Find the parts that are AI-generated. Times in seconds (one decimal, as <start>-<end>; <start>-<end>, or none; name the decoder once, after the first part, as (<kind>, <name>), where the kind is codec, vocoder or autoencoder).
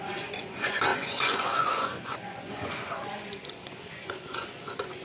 0.0-5.0 (vocoder, Vocos)